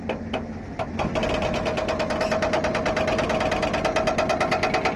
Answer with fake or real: real